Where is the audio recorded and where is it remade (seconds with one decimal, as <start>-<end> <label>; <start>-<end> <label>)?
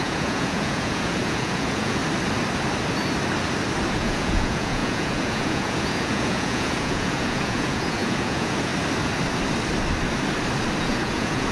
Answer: 0.0-2.0 remade; 2.0-3.9 recorded; 3.9-8.7 remade; 8.7-10.8 recorded; 10.8-11.5 remade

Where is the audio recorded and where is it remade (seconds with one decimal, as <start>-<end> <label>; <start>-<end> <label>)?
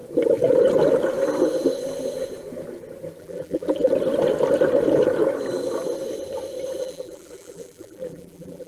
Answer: 0.0-3.2 recorded; 3.2-3.9 remade; 3.9-6.8 recorded; 6.8-8.7 remade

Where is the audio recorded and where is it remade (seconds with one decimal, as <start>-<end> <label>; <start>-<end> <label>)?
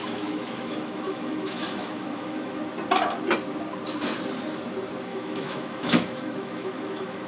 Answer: 0.0-2.6 remade; 2.6-5.1 recorded; 5.1-7.3 remade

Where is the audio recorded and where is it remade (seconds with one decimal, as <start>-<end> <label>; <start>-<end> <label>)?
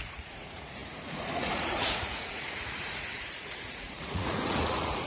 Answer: 0.0-5.1 remade